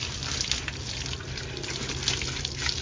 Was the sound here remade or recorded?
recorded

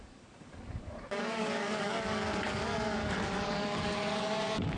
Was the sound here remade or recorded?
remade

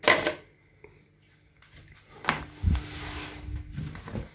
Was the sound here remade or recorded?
recorded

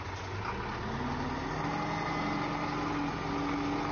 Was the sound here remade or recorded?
recorded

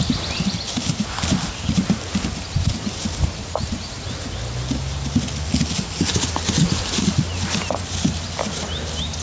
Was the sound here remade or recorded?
recorded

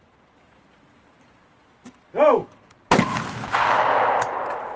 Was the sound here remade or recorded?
recorded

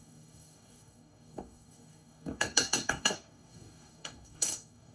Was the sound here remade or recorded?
remade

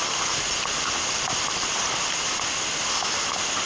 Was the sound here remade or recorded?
recorded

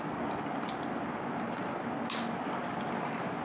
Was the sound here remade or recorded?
recorded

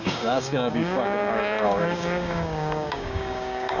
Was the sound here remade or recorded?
remade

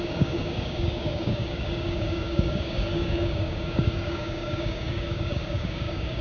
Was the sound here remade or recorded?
remade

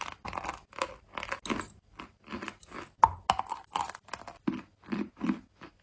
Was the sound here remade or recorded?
recorded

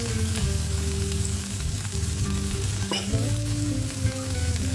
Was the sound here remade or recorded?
remade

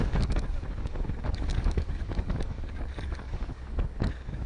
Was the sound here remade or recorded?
remade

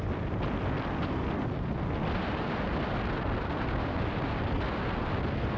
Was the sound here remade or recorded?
recorded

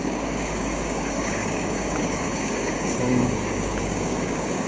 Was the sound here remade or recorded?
remade